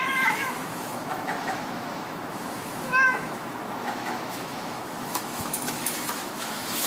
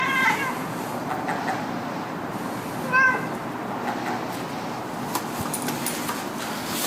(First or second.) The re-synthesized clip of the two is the first